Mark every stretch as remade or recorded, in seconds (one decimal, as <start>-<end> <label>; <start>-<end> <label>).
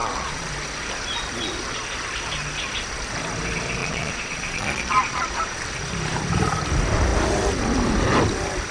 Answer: 0.0-0.5 remade; 0.5-3.8 recorded; 3.8-5.6 remade; 5.6-8.7 recorded